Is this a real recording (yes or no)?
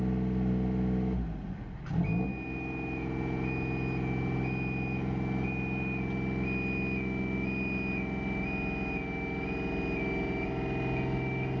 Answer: yes